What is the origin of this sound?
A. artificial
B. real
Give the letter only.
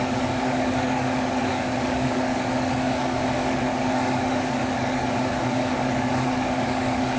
A